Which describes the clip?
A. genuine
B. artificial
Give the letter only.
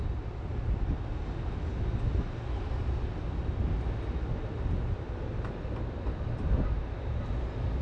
A